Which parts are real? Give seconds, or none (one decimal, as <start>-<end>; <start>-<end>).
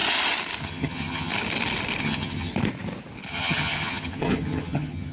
0.0-0.6; 1.3-2.0; 2.5-3.3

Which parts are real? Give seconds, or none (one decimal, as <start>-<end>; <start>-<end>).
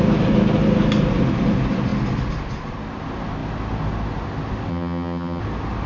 0.0-4.7; 5.4-5.9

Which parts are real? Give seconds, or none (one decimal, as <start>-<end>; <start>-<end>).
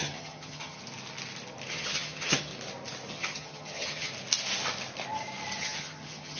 0.8-1.7; 2.5-3.1; 4.1-5.6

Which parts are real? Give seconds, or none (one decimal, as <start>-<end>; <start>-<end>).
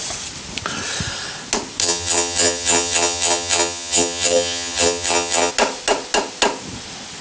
0.0-1.8; 5.5-7.2